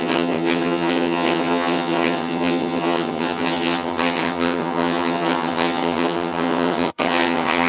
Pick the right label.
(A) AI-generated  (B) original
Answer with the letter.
A